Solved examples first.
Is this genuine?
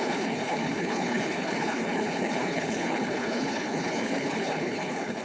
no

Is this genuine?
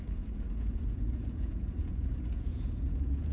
no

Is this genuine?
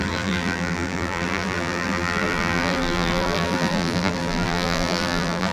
no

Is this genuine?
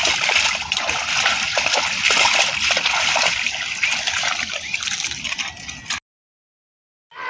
yes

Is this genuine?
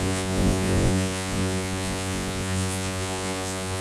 no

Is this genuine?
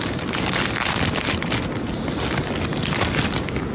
yes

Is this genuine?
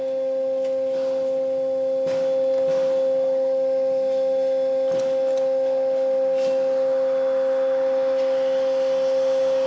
yes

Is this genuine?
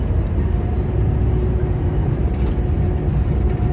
yes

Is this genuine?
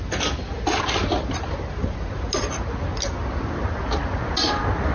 yes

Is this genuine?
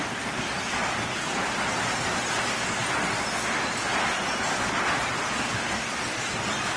yes